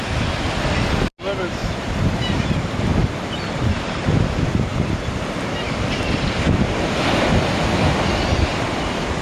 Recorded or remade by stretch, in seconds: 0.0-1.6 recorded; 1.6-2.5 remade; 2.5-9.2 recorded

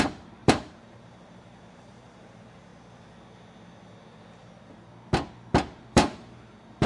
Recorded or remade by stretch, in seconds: 0.0-2.7 remade; 2.7-5.8 recorded; 5.8-6.9 remade

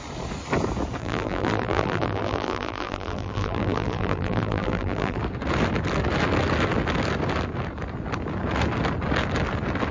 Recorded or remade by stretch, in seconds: 0.0-1.0 recorded; 1.0-5.2 remade; 5.2-9.9 recorded

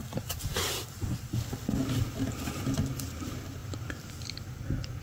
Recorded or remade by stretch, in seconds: 0.0-3.6 recorded; 3.6-4.1 remade; 4.1-5.0 recorded